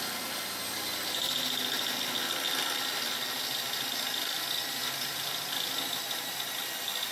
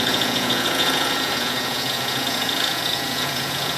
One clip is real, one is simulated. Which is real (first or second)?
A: first